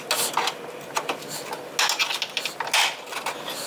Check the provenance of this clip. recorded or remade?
recorded